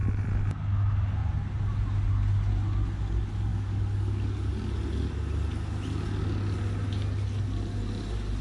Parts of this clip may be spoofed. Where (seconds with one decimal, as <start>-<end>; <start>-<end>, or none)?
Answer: 3.5-4.5